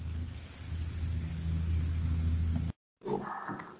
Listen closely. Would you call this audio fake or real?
real